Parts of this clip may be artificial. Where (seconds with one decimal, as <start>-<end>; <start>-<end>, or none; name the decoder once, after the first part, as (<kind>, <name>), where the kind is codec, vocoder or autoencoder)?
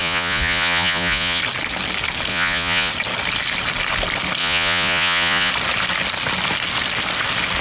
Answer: 0.0-1.4 (vocoder, Vocos); 2.3-2.9; 4.4-5.5